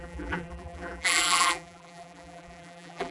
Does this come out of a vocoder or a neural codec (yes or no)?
yes